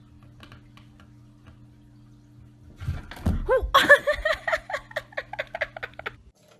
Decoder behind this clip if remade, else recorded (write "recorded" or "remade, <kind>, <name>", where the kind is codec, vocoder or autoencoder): recorded